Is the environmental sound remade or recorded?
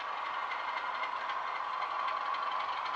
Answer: recorded